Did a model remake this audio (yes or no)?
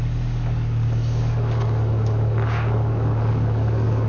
yes